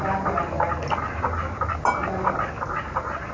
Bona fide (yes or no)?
yes